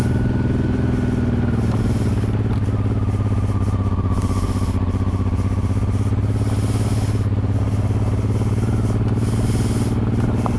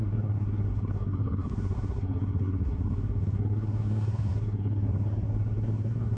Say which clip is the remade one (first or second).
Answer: second